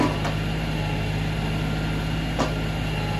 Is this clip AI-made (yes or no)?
no